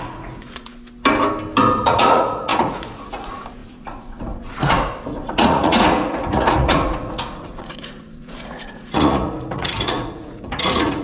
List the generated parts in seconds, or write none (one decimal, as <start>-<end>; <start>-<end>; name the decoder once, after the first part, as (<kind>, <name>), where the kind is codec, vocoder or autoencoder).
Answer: 0.0-0.7 (vocoder, Vocos); 1.8-11.0